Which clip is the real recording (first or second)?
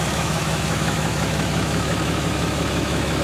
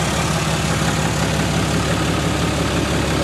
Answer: second